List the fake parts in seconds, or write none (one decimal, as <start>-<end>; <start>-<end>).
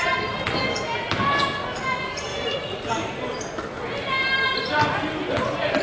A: 2.3-2.9